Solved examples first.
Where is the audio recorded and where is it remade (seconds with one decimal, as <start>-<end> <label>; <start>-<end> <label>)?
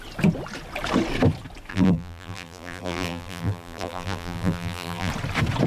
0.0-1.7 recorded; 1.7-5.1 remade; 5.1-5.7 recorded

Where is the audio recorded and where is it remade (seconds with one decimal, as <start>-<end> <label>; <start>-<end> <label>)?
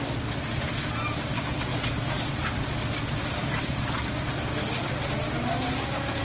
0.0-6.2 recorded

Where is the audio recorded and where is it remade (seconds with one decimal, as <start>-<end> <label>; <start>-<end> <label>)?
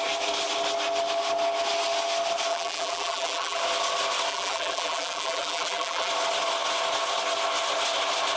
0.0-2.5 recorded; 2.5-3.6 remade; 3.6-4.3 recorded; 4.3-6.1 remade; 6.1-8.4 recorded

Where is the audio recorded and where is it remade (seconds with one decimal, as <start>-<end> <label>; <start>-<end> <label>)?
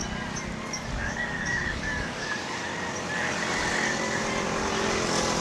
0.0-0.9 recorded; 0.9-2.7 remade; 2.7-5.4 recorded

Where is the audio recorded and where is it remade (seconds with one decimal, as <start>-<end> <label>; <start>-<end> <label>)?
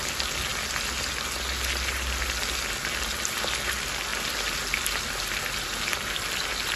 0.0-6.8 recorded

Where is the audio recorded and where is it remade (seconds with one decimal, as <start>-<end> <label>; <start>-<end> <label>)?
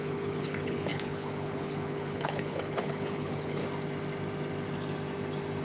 0.0-3.6 remade; 3.6-5.6 recorded